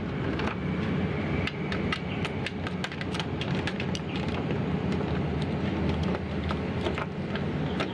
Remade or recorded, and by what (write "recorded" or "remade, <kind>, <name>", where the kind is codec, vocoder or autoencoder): recorded